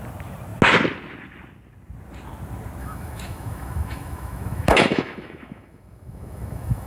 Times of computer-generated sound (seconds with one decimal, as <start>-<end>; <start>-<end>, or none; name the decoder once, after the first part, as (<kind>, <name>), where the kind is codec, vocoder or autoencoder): 2.8-6.9 (autoencoder, DAC-VAE)